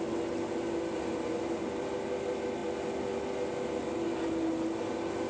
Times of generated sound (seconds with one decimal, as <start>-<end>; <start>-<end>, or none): none